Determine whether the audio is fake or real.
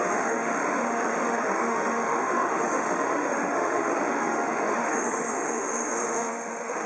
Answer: fake